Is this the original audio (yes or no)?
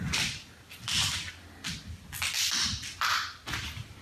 yes